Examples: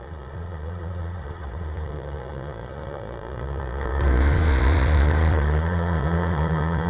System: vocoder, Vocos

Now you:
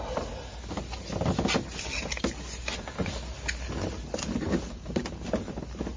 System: none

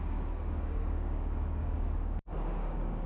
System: codec, DAC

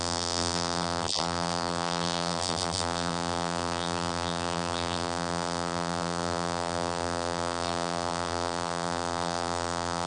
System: vocoder, BigVGAN v2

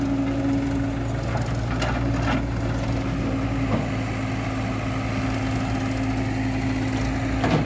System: none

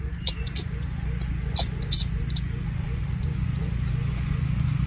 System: vocoder, Vocos